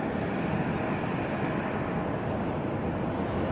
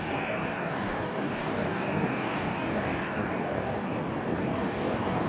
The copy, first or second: second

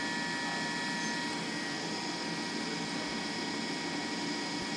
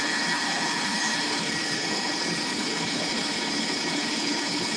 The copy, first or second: second